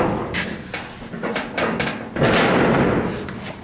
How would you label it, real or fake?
real